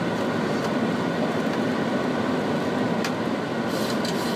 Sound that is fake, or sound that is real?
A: real